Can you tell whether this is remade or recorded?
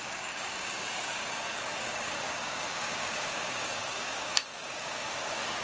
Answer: remade